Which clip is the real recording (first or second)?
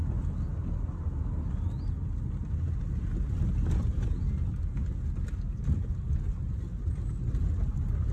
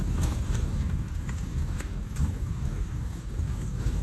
first